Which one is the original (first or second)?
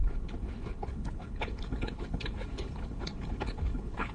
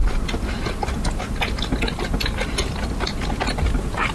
second